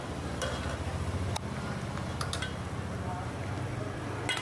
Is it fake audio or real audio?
real